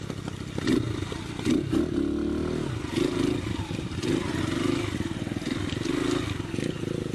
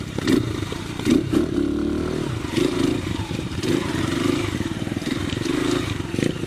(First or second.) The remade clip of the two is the second